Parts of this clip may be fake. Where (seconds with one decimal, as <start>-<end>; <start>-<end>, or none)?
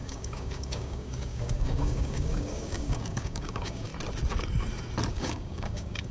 0.0-3.9; 5.1-6.1